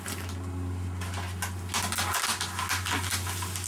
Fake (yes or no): no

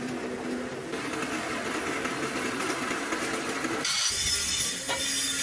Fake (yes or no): no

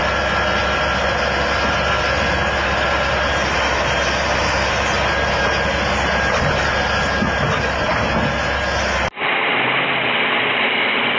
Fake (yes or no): no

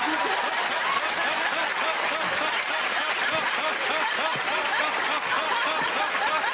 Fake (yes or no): no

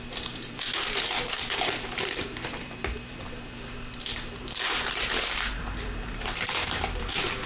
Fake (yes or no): yes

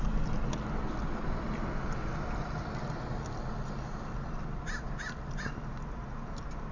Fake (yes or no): no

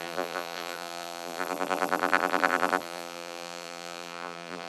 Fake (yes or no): yes